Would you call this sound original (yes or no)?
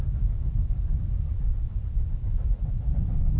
yes